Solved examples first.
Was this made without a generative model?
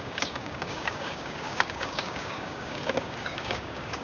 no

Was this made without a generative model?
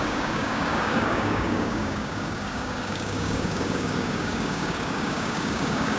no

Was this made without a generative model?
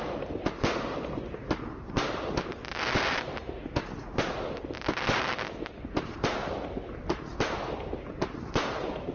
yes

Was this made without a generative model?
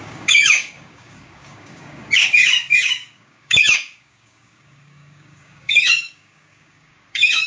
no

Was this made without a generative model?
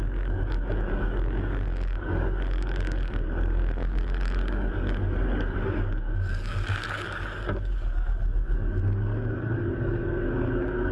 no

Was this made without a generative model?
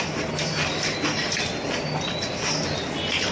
yes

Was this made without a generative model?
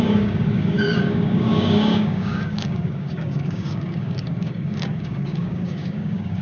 no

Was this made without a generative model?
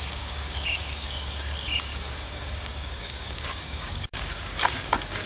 no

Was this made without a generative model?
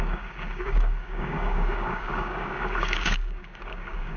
no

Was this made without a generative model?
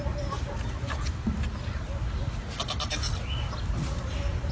yes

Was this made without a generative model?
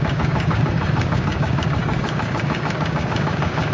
no